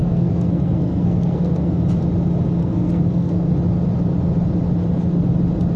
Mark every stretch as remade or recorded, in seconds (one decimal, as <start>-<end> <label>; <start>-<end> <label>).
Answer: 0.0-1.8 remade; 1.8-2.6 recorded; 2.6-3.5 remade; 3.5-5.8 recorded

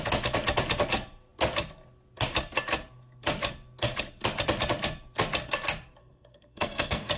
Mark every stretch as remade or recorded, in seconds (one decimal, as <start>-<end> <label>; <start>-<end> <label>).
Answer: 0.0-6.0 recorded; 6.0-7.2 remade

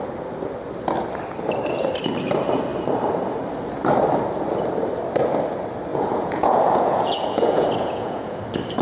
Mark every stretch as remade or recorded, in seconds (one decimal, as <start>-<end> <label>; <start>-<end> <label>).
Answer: 0.0-5.9 recorded; 5.9-8.4 remade; 8.4-8.8 recorded